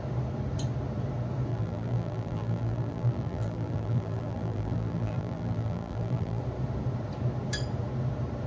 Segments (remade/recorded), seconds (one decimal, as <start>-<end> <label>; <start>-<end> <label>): 0.0-1.5 recorded; 1.5-6.4 remade; 6.4-8.5 recorded